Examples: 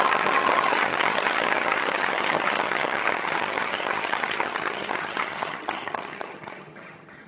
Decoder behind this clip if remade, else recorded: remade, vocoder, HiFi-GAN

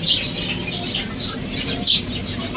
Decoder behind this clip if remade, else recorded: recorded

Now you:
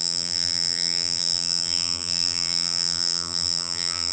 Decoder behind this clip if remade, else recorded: remade, vocoder, BigVGAN v2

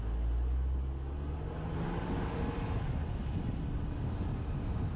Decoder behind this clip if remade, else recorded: recorded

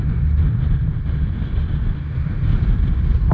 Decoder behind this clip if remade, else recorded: recorded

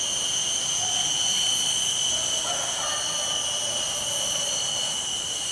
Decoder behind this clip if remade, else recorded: recorded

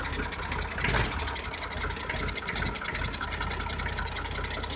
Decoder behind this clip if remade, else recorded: recorded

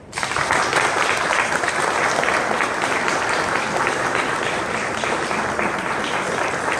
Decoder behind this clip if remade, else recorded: recorded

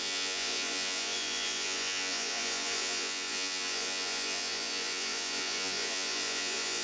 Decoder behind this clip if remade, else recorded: remade, vocoder, Vocos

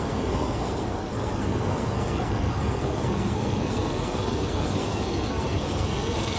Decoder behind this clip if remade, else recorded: remade, codec, SNAC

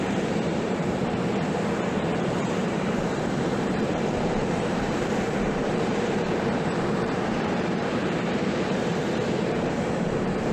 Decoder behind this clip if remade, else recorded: remade, vocoder, BigVGAN v2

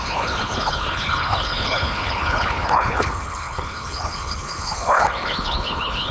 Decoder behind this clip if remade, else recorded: remade, codec, HILCodec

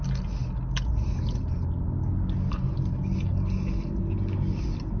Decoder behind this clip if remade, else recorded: recorded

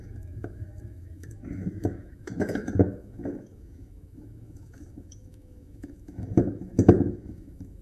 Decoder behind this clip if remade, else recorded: remade, autoencoder, DAC-VAE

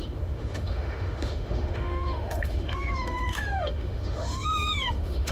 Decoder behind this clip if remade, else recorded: remade, autoencoder, DAC-VAE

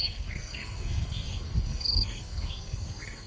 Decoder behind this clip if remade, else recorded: remade, codec, SNAC